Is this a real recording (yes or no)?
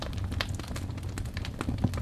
yes